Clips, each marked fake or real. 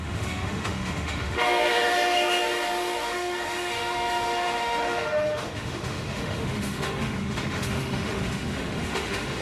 fake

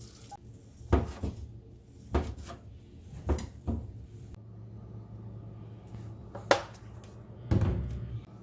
real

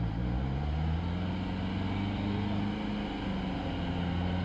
real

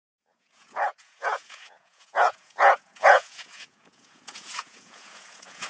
fake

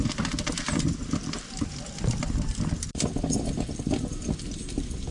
fake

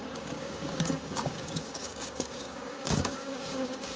fake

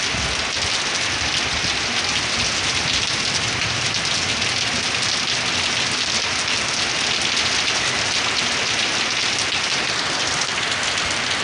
real